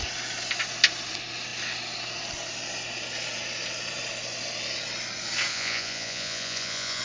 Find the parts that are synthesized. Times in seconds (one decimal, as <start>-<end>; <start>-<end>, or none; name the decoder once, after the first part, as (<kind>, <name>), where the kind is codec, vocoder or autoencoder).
5.5-7.0 (vocoder, Vocos)